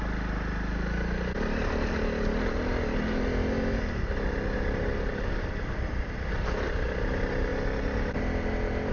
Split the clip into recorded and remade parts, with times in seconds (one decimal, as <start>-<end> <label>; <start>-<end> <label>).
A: 0.0-8.9 recorded

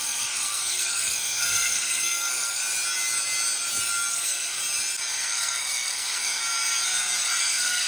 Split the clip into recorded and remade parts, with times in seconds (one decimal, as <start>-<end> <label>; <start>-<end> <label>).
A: 0.0-2.6 remade; 2.6-4.1 recorded; 4.1-4.6 remade; 4.6-5.1 recorded; 5.1-6.4 remade; 6.4-7.4 recorded; 7.4-7.9 remade